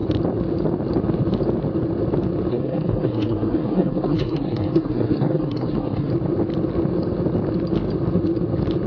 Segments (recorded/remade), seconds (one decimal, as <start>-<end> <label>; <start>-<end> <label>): 0.0-2.5 recorded; 2.5-6.1 remade; 6.1-8.9 recorded